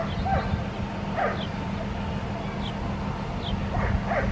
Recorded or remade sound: recorded